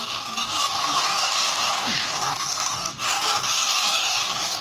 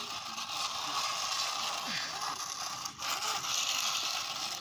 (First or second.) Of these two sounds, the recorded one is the second